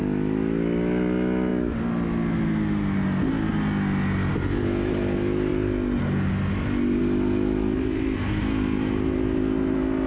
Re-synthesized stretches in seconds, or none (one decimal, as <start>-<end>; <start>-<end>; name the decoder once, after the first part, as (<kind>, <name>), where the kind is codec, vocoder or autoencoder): none